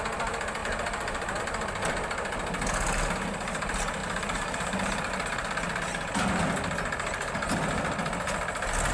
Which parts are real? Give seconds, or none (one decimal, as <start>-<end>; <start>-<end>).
0.0-0.6; 1.4-4.0; 5.1-8.9